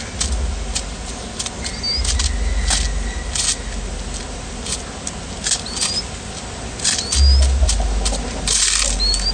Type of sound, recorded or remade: recorded